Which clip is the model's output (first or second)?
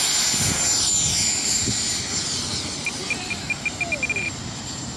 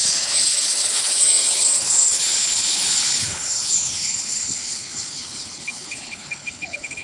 second